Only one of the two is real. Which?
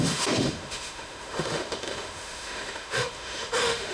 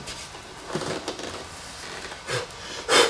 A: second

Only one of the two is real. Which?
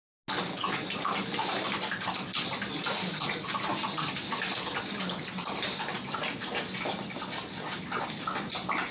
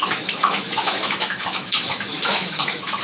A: first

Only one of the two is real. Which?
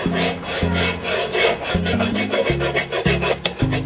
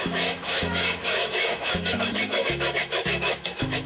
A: first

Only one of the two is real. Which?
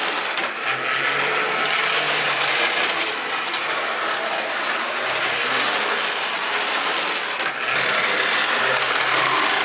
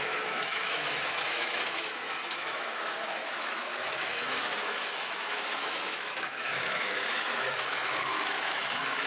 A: first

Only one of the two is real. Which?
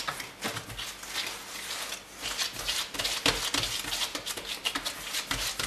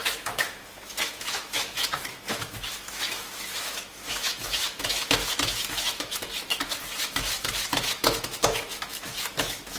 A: first